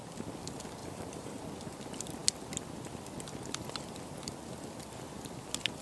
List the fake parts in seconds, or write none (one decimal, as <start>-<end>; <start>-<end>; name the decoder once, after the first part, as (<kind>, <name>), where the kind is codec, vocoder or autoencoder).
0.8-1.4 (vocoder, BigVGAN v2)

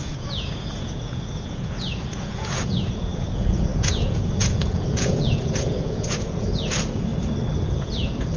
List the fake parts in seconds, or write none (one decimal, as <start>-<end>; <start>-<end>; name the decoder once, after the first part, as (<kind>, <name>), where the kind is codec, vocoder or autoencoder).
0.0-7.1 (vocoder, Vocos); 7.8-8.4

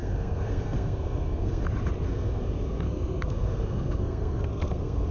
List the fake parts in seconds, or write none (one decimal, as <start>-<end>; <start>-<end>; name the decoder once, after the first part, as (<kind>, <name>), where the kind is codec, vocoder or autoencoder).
0.0-1.6 (codec, SNAC); 2.1-5.1